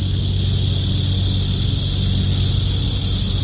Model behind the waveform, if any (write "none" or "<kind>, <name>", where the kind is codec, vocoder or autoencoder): none